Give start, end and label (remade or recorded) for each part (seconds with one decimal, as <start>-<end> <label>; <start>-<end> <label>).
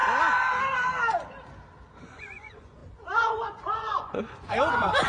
0.0-2.0 recorded; 2.0-5.1 remade